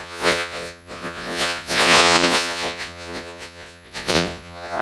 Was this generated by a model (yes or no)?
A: yes